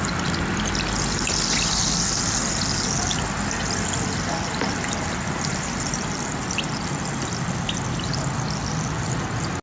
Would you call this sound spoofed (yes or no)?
no